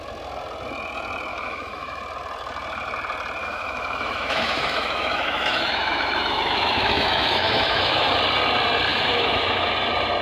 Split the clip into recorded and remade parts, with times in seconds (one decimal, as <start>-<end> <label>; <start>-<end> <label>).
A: 0.0-1.3 recorded; 1.3-2.0 remade; 2.0-3.4 recorded; 3.4-8.2 remade; 8.2-8.9 recorded; 8.9-9.7 remade; 9.7-10.2 recorded